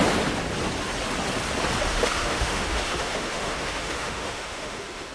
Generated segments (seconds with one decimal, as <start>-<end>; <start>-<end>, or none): 1.9-5.1